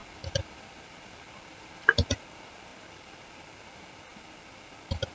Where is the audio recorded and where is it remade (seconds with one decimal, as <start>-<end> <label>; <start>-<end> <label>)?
0.0-5.1 recorded